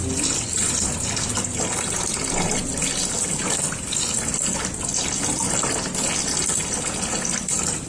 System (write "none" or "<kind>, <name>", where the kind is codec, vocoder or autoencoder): none